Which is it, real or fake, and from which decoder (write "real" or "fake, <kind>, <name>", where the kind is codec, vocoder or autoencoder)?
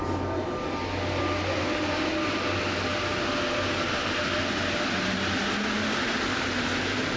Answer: real